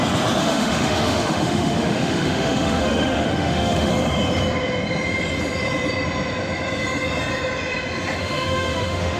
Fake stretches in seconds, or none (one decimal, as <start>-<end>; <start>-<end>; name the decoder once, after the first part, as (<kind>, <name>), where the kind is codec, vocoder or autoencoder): 0.4-3.9 (autoencoder, DAC-VAE); 8.2-9.2